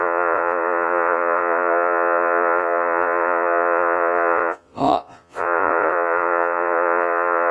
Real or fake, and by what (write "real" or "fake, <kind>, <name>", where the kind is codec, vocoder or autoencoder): fake, vocoder, Vocos